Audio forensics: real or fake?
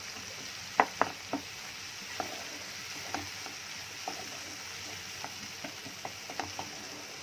real